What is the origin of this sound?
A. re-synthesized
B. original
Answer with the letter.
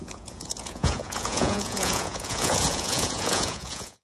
A